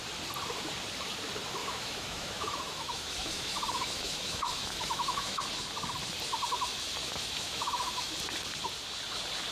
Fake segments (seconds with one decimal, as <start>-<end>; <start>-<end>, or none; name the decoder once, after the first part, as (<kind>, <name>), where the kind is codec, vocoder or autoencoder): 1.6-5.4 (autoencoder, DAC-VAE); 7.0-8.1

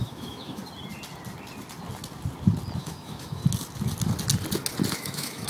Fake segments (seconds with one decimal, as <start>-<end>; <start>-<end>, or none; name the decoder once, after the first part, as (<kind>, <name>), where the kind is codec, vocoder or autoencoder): 0.0-0.6 (autoencoder, DAC-VAE); 2.8-3.4; 4.9-5.5

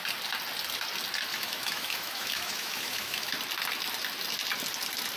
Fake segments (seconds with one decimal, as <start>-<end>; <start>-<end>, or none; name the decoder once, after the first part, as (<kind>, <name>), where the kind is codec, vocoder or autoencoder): 1.3-3.3 (autoencoder, DAC-VAE)

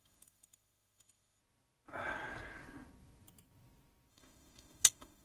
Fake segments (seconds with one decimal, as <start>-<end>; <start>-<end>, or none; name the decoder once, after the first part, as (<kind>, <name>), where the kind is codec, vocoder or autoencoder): 0.0-1.4 (autoencoder, DAC-VAE); 4.1-5.2